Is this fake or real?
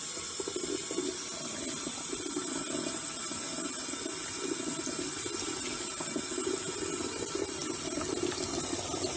real